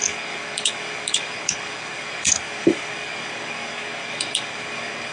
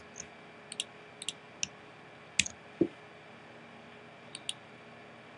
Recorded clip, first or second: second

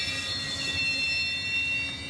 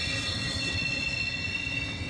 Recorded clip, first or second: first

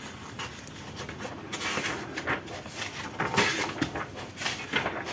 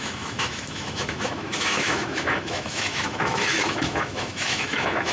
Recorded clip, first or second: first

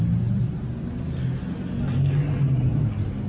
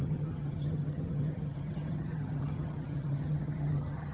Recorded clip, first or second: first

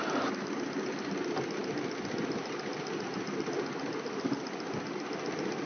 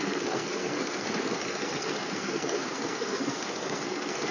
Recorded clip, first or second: first